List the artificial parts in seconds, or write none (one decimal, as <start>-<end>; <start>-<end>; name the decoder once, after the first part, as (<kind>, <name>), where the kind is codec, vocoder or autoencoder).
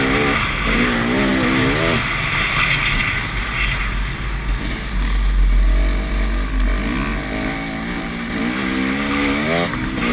none